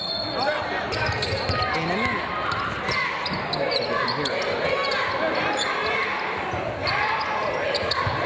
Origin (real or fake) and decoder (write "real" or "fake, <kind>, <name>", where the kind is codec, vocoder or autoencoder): real